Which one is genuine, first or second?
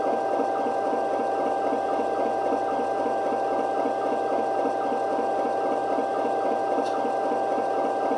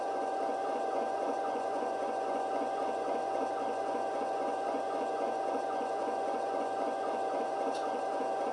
first